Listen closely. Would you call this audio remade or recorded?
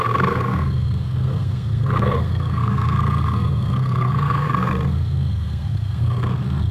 remade